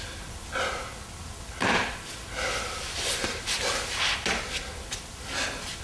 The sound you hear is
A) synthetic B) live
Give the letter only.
B